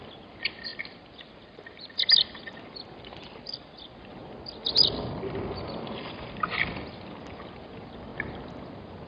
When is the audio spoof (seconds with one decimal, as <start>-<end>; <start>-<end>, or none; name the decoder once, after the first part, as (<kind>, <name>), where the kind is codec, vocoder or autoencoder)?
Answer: none